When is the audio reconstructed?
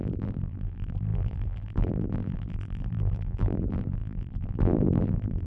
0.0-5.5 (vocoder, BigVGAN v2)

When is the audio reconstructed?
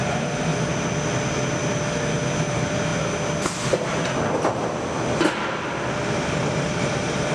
0.0-0.5 (vocoder, BigVGAN v2); 2.5-2.9; 6.2-7.3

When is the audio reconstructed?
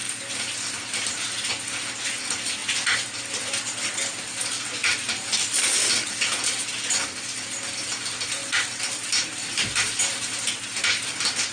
0.0-1.5 (vocoder, BigVGAN v2); 4.8-6.1; 8.4-11.1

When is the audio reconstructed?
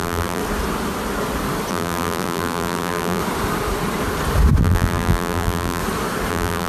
0.0-0.4 (vocoder, BigVGAN v2); 1.7-3.2; 4.6-5.8; 6.3-6.7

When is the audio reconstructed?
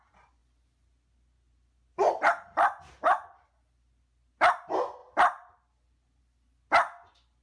none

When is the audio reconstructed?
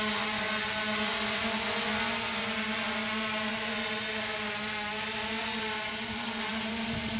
none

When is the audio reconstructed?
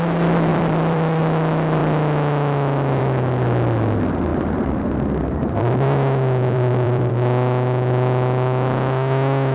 0.5-1.2 (vocoder, BigVGAN v2); 4.3-7.1